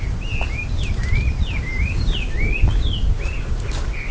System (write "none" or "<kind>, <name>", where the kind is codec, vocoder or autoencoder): none